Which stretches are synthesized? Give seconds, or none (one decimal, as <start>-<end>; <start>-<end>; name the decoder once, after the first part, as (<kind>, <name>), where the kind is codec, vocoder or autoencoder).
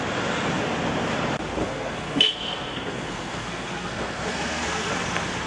1.6-4.9 (codec, SNAC)